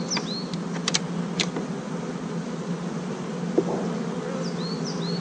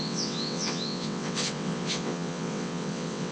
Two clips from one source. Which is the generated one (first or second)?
second